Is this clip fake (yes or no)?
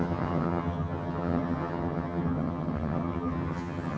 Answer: yes